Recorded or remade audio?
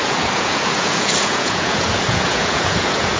remade